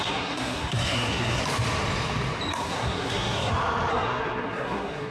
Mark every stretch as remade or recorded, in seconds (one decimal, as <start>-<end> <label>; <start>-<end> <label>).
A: 0.0-1.4 remade; 1.4-2.5 recorded; 2.5-3.5 remade; 3.5-3.9 recorded; 3.9-5.1 remade